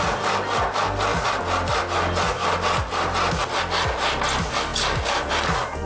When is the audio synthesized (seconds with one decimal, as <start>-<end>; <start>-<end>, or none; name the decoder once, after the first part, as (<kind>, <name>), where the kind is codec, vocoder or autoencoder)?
none